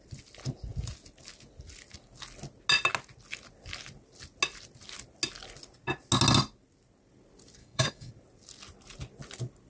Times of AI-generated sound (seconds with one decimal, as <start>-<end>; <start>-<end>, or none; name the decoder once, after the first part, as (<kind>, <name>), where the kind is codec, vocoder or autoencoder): 7.6-8.1 (codec, DAC)